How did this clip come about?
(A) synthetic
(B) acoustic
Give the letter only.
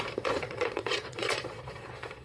A